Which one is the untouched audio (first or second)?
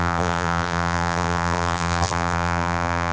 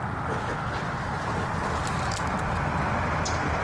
second